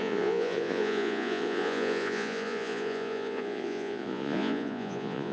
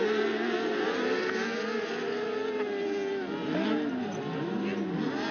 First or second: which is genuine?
second